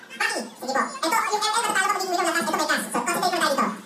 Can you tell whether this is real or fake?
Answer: real